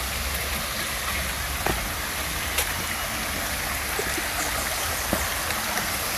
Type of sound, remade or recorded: recorded